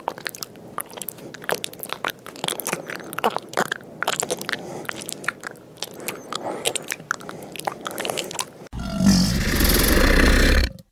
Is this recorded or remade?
recorded